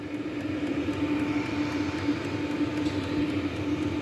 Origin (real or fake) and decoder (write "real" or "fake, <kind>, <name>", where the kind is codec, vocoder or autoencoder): real